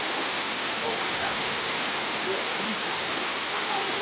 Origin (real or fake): fake